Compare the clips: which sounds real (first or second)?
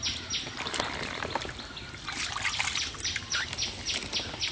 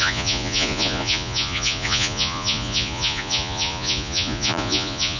first